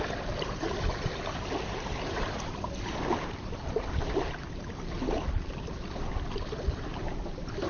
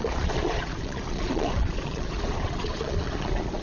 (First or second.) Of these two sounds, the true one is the first